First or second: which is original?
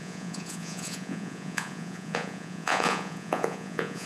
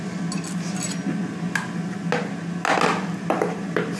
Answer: second